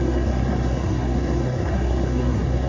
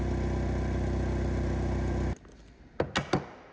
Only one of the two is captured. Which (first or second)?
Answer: second